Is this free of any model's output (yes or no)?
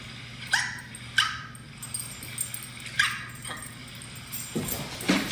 yes